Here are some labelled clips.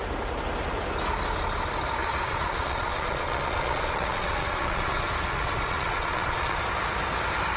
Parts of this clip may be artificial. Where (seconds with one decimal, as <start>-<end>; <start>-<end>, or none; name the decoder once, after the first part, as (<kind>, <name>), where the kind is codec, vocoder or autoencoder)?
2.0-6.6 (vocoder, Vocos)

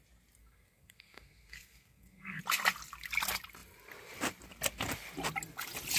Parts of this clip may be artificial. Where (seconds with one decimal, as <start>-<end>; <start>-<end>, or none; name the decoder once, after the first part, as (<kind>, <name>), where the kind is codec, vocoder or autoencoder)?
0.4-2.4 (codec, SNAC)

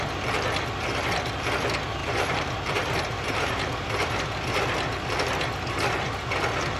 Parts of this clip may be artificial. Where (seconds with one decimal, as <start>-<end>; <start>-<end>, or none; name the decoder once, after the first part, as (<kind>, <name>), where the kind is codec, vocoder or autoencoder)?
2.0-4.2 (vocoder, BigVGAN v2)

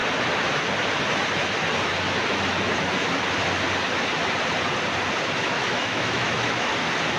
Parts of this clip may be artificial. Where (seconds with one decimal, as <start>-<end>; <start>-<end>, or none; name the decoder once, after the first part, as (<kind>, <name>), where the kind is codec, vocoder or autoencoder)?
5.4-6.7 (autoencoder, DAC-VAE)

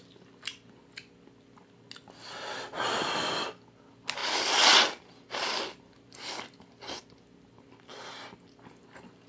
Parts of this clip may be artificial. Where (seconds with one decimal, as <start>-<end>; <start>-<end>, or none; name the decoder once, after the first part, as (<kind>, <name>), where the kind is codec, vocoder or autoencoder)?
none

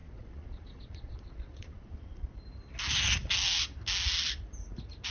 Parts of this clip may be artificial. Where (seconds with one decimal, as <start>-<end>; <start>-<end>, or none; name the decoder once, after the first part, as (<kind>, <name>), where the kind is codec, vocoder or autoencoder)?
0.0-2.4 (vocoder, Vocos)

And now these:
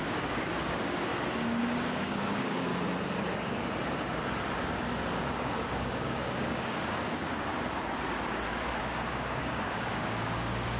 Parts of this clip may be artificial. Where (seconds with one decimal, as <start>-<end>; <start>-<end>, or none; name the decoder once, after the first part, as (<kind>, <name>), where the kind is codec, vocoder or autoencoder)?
0.0-1.1 (codec, DAC); 1.6-2.7; 5.1-7.5; 8.8-10.8